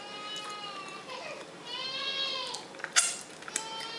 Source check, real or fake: real